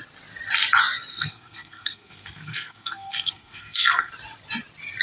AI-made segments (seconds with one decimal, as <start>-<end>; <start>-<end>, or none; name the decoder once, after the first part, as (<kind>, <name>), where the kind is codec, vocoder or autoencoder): 1.1-4.1 (codec, SNAC)